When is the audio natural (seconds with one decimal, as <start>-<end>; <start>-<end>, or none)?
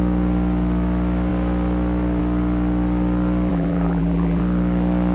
0.0-3.5; 4.4-5.1